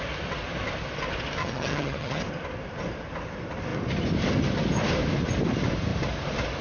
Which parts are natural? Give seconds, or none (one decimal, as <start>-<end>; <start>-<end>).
0.0-1.4; 2.2-6.6

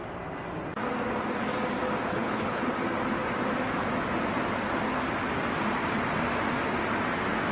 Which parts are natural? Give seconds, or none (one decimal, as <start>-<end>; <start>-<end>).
0.0-2.1; 2.6-7.5

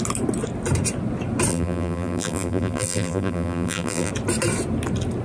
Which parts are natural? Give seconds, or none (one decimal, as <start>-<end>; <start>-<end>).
0.0-1.5; 4.1-5.2

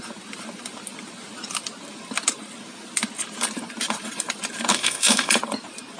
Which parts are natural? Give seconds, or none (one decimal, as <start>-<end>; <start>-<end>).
0.0-4.7; 5.3-6.0